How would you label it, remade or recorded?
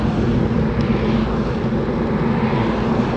recorded